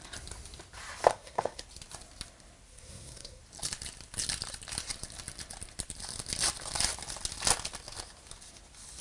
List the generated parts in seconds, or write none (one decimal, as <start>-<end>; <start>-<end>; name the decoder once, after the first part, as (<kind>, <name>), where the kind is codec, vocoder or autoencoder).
1.1-1.6 (codec, SNAC); 2.7-3.4